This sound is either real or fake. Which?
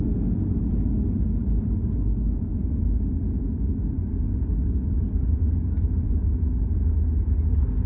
real